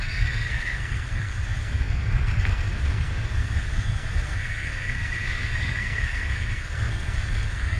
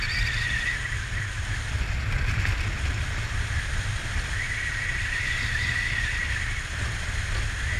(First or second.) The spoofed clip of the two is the first